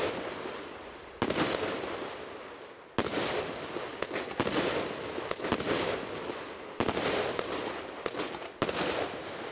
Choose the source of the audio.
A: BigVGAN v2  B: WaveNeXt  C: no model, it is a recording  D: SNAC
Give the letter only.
C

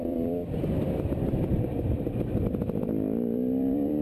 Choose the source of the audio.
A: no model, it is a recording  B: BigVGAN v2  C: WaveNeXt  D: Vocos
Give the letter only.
B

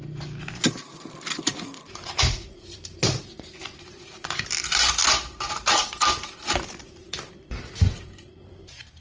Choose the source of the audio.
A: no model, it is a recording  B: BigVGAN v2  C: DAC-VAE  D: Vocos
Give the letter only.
B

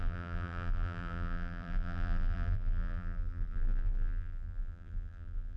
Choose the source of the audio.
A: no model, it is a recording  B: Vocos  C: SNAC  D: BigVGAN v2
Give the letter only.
D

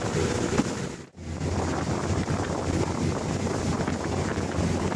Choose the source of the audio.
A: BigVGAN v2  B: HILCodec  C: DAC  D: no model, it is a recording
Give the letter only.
A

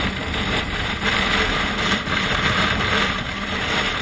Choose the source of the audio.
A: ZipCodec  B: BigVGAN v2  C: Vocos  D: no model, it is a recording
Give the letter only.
B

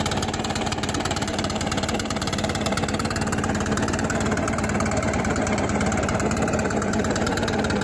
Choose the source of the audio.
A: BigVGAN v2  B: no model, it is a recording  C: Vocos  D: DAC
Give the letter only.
A